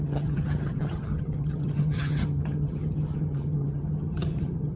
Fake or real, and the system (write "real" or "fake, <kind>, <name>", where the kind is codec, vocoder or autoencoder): fake, vocoder, HiFi-GAN